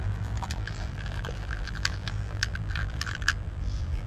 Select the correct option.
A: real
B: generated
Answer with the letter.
B